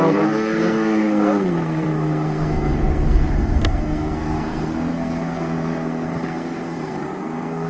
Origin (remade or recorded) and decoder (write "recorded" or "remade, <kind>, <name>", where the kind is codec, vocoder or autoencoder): remade, codec, SNAC